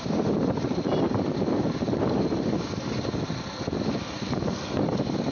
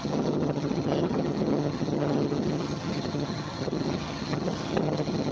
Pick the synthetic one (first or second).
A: second